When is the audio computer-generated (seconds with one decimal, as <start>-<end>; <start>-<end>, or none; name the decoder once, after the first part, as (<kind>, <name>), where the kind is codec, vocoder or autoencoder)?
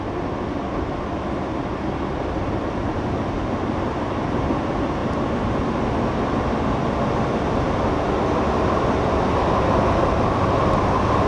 none